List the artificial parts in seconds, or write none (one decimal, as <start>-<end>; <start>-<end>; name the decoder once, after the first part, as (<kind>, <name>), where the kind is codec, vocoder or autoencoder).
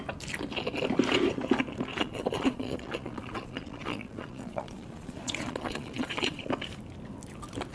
1.9-6.5 (vocoder, Vocos)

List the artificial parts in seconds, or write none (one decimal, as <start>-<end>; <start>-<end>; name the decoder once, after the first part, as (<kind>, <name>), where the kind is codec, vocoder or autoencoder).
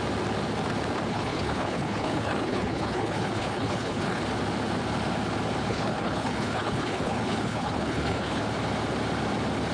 1.1-4.2 (codec, HILCodec); 5.7-8.4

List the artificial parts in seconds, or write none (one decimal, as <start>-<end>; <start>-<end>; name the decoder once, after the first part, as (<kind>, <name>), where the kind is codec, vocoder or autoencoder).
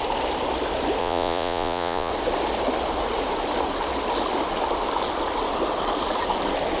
1.0-2.1 (vocoder, Vocos)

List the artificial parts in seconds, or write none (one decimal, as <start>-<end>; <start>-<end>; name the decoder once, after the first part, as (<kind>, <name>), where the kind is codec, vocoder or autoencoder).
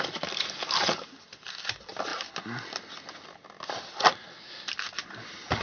none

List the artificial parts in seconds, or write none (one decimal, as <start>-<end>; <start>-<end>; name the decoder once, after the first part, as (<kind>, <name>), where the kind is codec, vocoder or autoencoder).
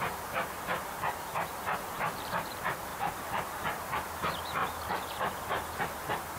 0.0-4.6 (vocoder, BigVGAN v2); 5.8-6.4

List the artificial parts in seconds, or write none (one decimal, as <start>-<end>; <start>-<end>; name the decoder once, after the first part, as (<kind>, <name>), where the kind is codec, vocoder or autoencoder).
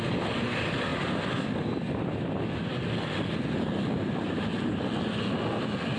none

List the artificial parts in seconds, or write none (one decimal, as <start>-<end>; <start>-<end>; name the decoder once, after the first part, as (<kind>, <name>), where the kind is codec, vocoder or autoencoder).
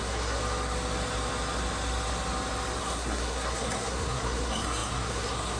0.0-0.4 (codec, SNAC); 2.8-5.6